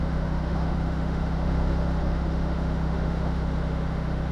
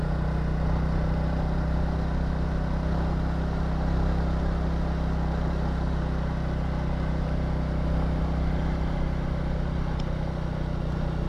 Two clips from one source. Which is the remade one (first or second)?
first